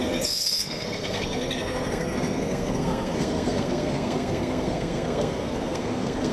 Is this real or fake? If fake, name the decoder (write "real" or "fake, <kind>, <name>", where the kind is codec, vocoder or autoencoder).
fake, codec, SNAC